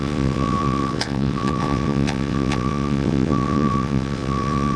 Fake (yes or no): yes